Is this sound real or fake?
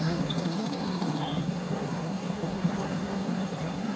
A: fake